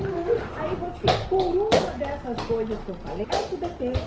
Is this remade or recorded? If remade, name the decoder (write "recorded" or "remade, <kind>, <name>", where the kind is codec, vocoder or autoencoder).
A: recorded